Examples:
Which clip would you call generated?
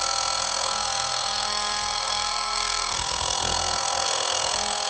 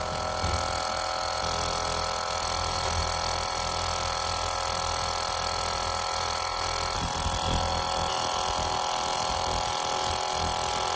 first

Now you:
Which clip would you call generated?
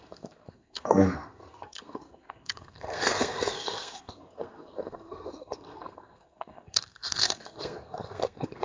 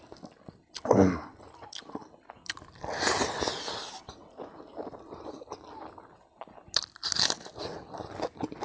first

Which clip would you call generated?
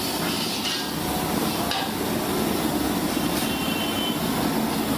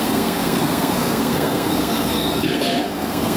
second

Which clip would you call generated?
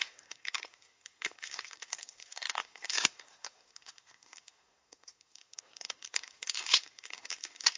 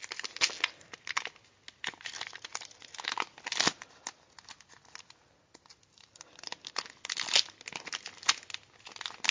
first